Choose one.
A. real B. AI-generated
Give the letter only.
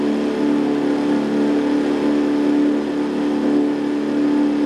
A